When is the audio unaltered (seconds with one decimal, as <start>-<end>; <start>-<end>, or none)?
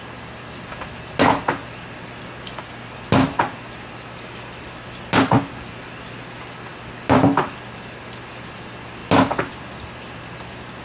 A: 0.0-10.8